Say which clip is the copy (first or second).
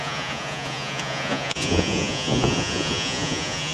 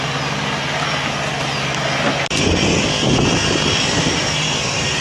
first